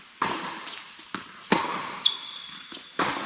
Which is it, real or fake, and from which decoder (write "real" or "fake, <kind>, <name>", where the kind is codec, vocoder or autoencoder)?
real